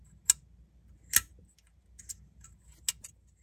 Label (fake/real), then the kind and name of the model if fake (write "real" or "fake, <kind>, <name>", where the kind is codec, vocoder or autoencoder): real